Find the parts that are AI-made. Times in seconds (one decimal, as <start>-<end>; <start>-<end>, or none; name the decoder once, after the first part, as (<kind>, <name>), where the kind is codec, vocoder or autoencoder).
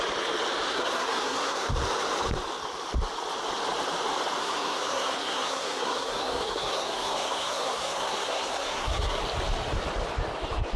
0.7-1.7 (codec, SNAC); 4.4-9.2